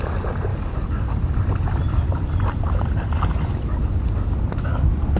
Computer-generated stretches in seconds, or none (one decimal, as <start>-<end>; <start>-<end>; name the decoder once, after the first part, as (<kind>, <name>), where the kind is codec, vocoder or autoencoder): 0.5-1.2 (codec, DAC)